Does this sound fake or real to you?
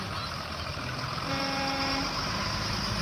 fake